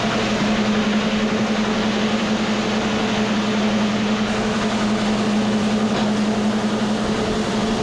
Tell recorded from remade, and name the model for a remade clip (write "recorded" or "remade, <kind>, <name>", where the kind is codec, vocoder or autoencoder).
recorded